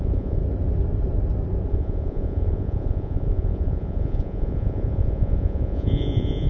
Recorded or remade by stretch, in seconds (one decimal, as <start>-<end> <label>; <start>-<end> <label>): 0.0-0.4 remade; 0.4-1.7 recorded; 1.7-6.5 remade